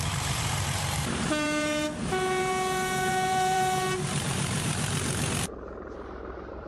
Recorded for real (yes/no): no